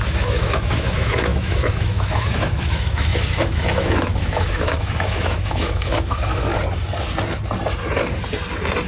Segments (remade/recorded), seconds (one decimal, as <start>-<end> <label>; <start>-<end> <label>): 0.0-6.5 remade; 6.5-8.9 recorded